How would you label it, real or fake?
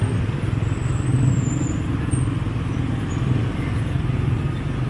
real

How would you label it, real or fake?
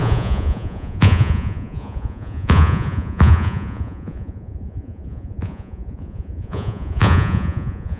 fake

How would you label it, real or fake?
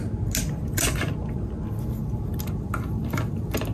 real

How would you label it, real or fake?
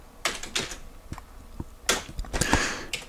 real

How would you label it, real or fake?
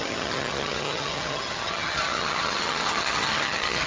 fake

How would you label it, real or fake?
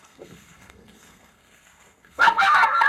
fake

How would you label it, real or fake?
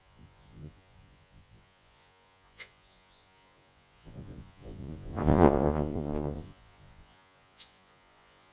fake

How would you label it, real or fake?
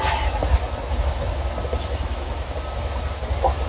real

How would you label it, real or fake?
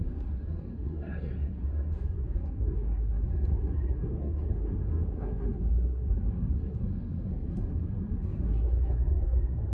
fake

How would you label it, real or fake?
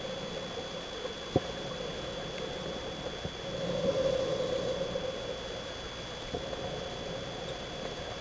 real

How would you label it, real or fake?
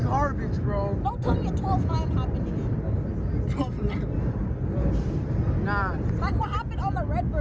real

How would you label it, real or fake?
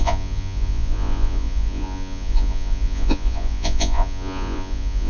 fake